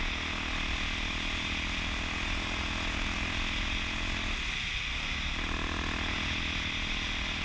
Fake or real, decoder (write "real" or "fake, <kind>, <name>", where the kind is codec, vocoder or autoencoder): real